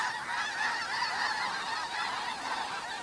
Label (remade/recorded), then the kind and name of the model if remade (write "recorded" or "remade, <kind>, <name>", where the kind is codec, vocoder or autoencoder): recorded